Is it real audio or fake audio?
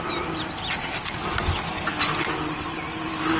real